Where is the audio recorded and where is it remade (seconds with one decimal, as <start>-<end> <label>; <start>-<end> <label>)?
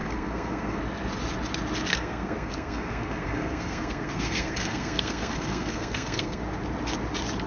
0.0-0.8 remade; 0.8-1.9 recorded; 1.9-6.4 remade; 6.4-7.5 recorded